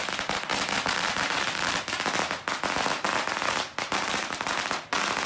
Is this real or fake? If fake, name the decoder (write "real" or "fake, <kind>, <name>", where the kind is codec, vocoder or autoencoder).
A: real